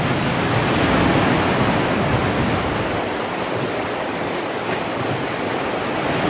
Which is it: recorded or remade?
recorded